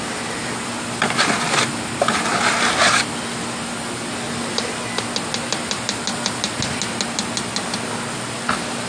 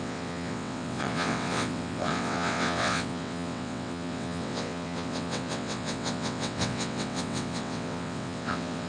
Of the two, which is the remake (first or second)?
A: second